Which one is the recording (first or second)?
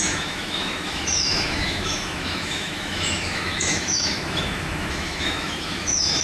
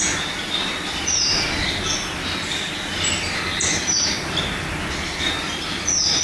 second